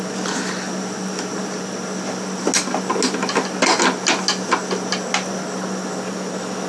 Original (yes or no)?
yes